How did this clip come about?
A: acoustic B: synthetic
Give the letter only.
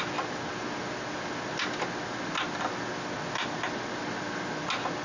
A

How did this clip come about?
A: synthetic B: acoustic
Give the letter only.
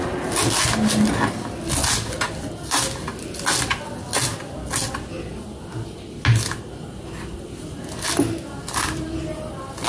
B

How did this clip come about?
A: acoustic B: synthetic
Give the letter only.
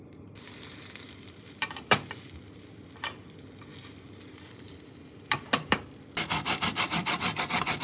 B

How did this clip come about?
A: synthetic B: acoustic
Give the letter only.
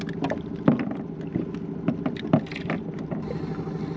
B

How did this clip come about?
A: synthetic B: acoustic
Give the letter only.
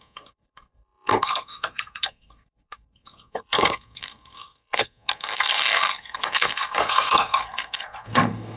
A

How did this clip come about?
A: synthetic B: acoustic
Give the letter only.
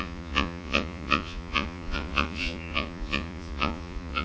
A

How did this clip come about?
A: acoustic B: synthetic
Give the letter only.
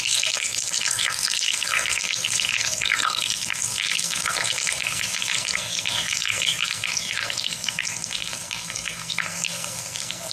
B